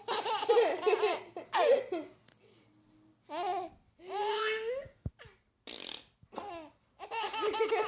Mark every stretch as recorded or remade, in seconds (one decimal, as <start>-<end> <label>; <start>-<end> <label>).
0.0-4.3 recorded; 4.3-5.1 remade; 5.1-7.9 recorded